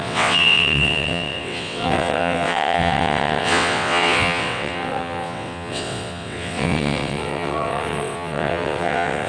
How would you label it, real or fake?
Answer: fake